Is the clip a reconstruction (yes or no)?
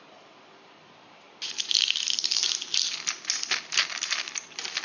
no